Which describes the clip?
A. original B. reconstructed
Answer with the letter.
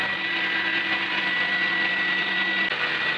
A